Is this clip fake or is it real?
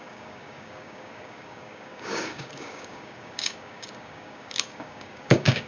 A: fake